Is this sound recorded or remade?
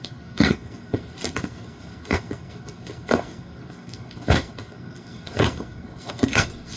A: remade